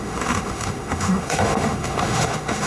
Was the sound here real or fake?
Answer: fake